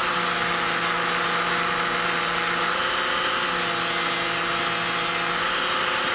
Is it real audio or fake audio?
real